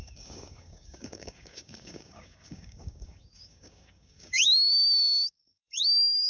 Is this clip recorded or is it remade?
remade